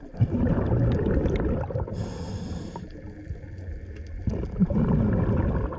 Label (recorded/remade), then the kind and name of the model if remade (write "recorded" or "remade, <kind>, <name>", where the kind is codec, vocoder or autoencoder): recorded